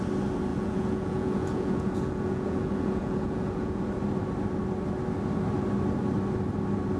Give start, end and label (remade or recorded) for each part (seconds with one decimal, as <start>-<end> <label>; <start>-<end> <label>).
0.0-0.5 recorded; 0.5-3.8 remade; 3.8-7.0 recorded